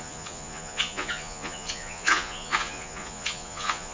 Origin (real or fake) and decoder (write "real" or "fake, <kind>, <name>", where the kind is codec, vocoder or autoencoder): fake, vocoder, Vocos